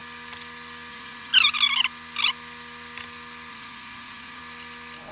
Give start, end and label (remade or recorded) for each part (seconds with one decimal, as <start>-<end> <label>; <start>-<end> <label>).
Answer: 0.0-0.9 recorded; 0.9-1.3 remade; 1.3-3.5 recorded; 3.5-4.4 remade; 4.4-5.1 recorded